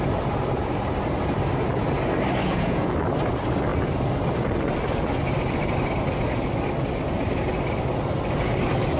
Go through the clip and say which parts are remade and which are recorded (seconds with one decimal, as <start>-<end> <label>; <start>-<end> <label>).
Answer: 0.0-2.4 recorded; 2.4-2.9 remade; 2.9-9.0 recorded